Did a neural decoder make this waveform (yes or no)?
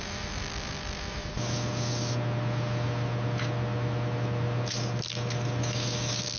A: no